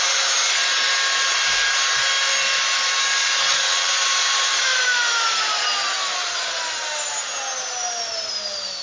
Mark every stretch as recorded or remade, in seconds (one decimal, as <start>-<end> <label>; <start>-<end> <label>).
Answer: 0.0-3.2 recorded; 3.2-3.9 remade; 3.9-8.8 recorded